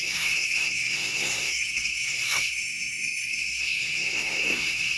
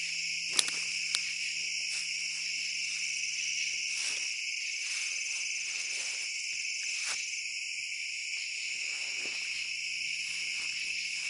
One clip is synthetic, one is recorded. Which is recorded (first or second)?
second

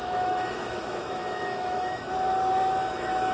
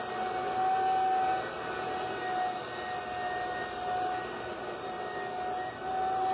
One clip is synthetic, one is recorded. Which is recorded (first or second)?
second